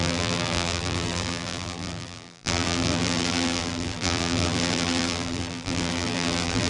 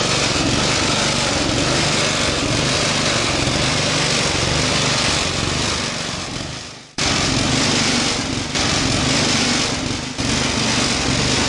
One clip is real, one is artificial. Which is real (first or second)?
second